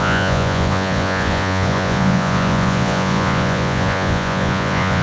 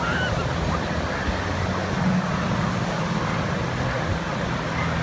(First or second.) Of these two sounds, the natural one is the second